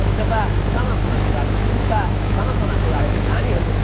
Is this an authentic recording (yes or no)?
no